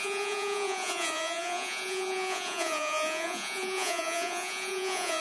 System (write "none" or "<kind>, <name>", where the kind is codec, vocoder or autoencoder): vocoder, Vocos